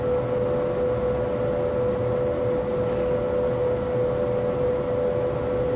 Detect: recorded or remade recorded